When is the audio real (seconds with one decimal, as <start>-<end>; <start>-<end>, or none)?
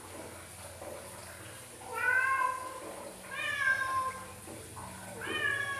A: 0.0-5.8